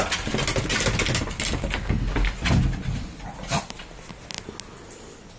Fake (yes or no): no